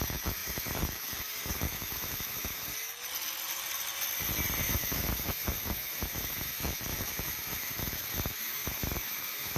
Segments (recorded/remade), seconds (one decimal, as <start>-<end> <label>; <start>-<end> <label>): 0.0-2.7 remade; 2.7-4.6 recorded; 4.6-9.6 remade